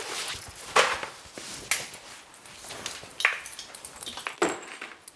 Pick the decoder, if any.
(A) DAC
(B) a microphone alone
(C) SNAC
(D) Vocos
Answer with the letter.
B